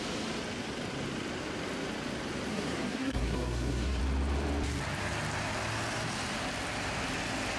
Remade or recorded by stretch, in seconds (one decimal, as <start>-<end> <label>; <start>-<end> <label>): 0.0-2.5 recorded; 2.5-4.0 remade; 4.0-7.6 recorded